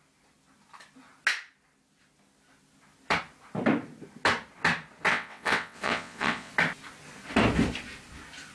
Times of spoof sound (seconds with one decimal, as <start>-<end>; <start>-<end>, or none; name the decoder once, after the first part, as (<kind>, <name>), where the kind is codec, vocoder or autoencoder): 5.1-6.5 (vocoder, WaveNeXt)

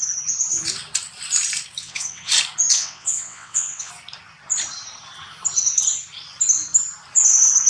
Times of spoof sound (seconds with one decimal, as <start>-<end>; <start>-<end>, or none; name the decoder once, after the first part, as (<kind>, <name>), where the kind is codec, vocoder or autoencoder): 1.8-2.3 (vocoder, WaveNeXt); 2.7-3.9